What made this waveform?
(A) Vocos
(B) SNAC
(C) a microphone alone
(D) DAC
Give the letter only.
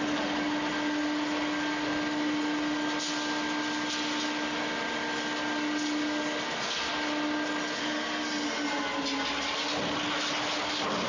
C